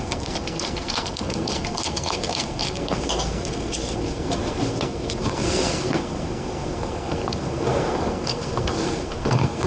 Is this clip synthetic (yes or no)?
yes